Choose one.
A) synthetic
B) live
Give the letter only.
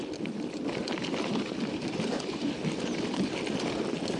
B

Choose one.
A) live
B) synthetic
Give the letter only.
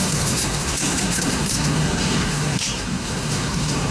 B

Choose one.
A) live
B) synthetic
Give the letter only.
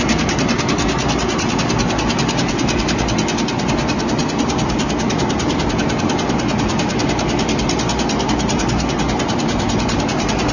A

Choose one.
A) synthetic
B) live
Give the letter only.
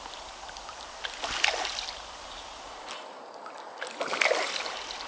B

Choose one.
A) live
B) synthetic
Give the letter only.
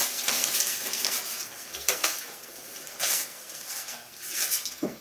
B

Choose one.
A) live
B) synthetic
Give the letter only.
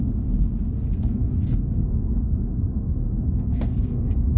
B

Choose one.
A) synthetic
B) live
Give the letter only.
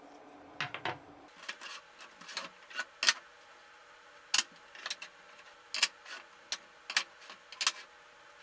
B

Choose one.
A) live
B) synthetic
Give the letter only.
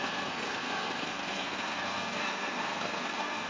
B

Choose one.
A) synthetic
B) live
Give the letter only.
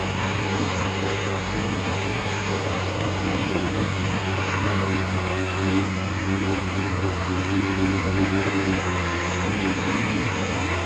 A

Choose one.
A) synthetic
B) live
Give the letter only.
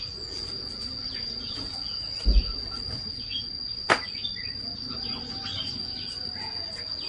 B